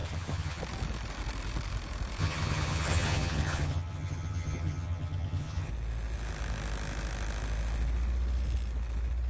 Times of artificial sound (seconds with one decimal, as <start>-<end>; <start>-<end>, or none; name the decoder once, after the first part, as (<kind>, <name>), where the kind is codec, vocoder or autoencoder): 0.0-0.6 (vocoder, HiFi-GAN); 2.2-5.7